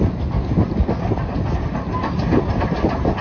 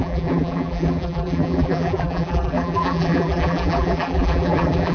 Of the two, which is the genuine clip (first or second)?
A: first